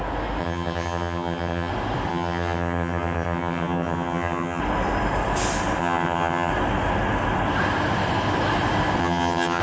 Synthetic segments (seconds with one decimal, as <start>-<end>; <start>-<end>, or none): 0.4-1.7; 2.1-4.6; 5.8-6.5; 9.0-9.6